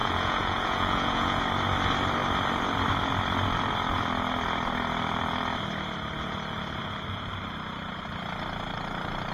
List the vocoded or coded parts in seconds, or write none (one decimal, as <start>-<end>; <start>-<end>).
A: 0.0-1.4

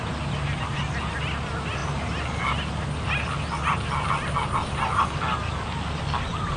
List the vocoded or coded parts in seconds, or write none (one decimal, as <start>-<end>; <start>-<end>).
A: none

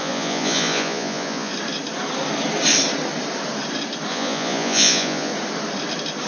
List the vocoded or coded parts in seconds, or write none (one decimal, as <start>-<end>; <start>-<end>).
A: 0.0-1.5; 4.1-5.3

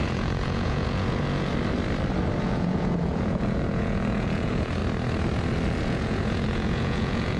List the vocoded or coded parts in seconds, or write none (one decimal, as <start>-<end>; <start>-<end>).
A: 0.0-1.5; 2.4-4.8; 5.8-7.4

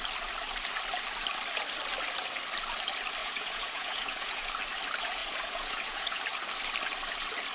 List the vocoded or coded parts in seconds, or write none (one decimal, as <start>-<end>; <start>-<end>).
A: 3.2-4.5; 5.2-6.2

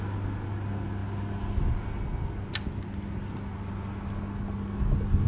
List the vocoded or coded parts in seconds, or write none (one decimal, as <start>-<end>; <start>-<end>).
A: none